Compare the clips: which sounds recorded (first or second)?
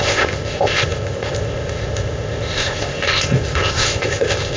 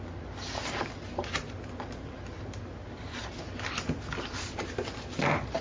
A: second